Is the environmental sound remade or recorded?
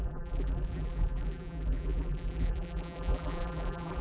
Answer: remade